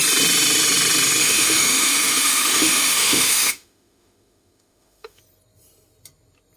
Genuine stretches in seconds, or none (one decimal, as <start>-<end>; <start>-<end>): 0.0-1.2; 5.2-6.6